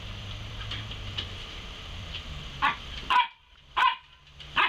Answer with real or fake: fake